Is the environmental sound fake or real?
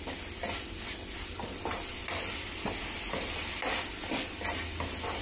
real